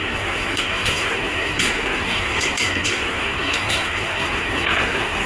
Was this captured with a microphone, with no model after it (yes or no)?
no